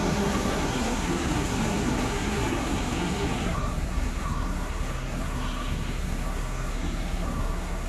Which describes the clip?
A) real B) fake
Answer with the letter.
B